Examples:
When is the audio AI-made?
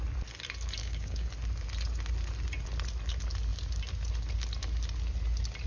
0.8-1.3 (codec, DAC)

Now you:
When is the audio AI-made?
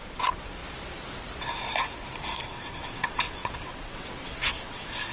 0.0-0.6 (vocoder, WaveNeXt); 2.4-5.1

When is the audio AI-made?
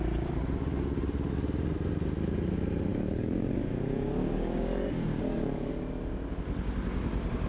2.9-5.7 (codec, DAC)